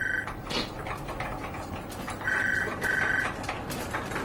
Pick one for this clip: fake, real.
real